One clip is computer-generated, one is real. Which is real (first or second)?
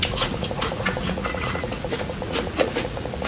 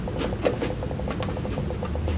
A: second